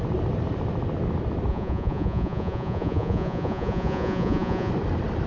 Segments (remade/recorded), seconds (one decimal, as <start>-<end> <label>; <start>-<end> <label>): 0.0-1.5 recorded; 1.5-4.7 remade; 4.7-5.3 recorded